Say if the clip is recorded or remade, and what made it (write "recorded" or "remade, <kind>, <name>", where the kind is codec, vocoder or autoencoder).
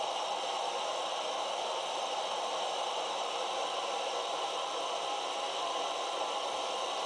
remade, vocoder, BigVGAN v2